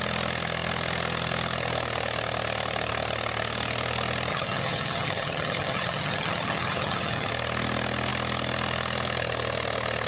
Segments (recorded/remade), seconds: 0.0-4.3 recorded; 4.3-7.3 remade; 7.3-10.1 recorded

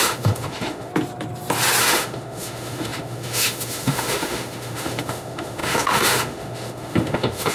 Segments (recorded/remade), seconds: 0.0-0.9 remade; 0.9-1.8 recorded; 1.8-7.5 remade

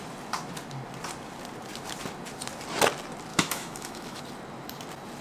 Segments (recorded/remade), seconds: 0.0-3.3 recorded; 3.3-4.2 remade; 4.2-5.2 recorded

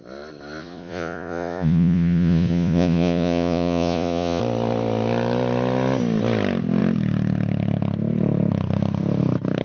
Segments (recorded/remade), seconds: 0.0-0.6 recorded; 0.6-4.4 remade; 4.4-9.6 recorded

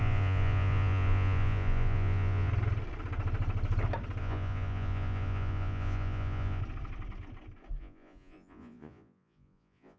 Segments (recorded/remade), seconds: 0.0-2.5 remade; 2.5-4.2 recorded; 4.2-6.6 remade; 6.6-7.8 recorded; 7.8-10.0 remade

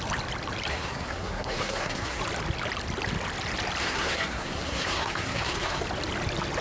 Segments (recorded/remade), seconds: 0.0-0.7 recorded; 0.7-2.2 remade; 2.2-3.8 recorded; 3.8-5.8 remade; 5.8-6.6 recorded